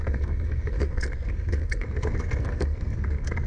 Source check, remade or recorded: remade